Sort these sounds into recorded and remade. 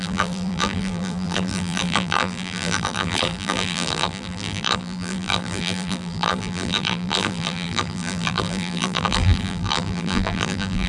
remade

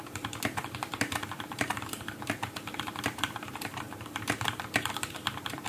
remade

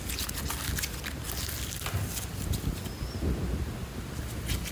recorded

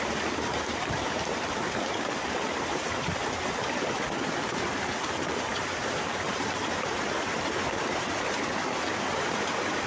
remade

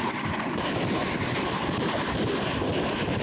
remade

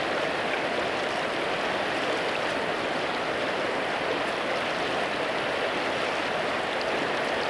recorded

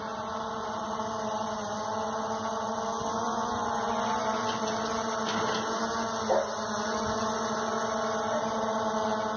recorded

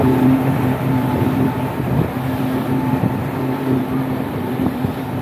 remade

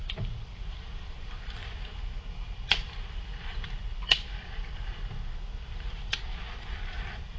remade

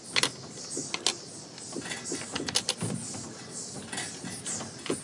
recorded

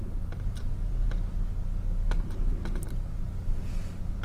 recorded